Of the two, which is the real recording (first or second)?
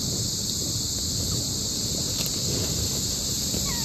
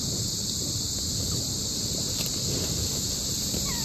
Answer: first